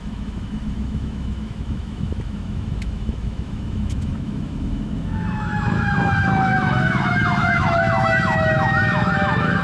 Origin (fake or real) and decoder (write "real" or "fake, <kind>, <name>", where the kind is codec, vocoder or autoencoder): fake, autoencoder, DAC-VAE